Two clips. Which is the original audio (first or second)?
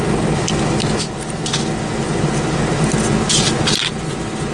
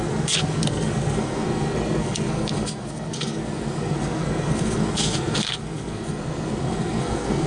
first